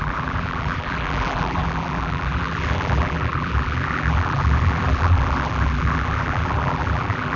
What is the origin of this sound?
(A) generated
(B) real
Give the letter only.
A